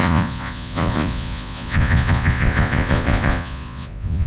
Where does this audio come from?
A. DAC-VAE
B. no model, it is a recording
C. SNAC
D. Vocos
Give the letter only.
D